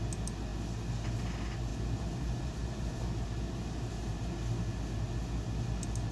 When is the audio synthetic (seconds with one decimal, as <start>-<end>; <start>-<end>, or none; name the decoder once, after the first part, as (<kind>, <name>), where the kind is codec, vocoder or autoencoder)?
1.7-4.3 (vocoder, BigVGAN v2)